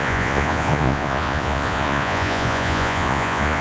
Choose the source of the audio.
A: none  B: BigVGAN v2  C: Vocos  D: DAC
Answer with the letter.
C